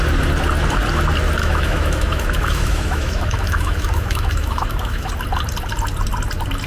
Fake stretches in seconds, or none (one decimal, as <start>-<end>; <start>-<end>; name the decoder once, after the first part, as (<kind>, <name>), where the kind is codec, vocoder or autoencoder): 1.4-5.1 (autoencoder, DAC-VAE)